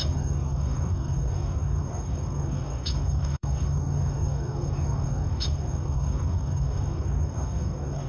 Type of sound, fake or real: fake